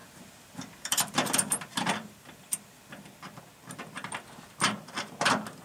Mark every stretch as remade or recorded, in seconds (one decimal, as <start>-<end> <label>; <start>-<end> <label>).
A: 0.0-3.4 remade; 3.4-5.6 recorded